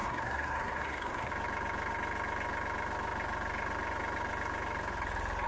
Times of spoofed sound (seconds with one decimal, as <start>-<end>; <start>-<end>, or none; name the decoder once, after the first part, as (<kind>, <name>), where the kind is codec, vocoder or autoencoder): 0.0-1.3 (codec, SNAC)